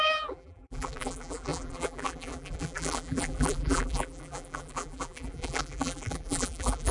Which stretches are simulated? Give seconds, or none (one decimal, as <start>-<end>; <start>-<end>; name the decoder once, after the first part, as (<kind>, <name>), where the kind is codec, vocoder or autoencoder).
0.0-6.9 (vocoder, BigVGAN v2)